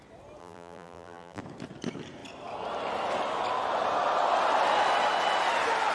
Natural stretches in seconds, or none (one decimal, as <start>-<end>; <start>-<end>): 0.0-0.4; 1.4-5.9